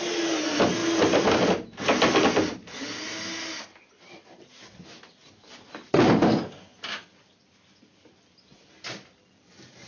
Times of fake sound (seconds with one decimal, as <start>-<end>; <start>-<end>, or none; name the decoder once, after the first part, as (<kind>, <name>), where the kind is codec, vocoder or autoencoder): none